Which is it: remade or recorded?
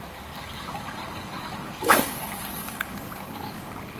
remade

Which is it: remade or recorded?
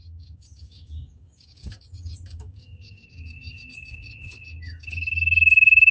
remade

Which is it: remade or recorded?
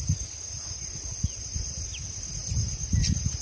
recorded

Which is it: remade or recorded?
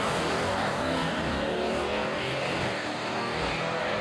remade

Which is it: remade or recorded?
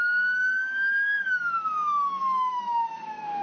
remade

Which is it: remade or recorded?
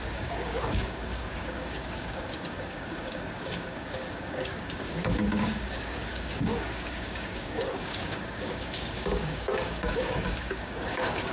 remade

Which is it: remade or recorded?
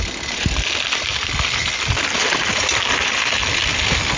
recorded